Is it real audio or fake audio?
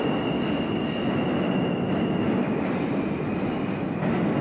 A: real